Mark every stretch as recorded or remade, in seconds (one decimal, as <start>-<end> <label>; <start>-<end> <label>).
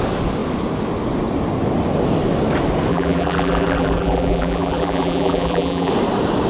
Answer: 0.0-2.9 recorded; 2.9-5.9 remade; 5.9-6.5 recorded